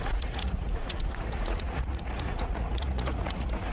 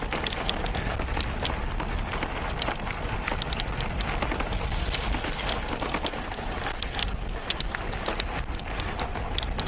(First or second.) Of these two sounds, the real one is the second